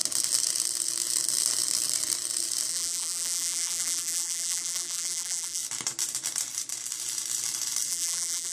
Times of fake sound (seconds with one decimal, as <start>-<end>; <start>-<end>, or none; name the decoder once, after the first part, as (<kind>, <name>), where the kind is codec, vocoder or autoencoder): 2.7-5.6 (vocoder, BigVGAN v2); 7.9-8.5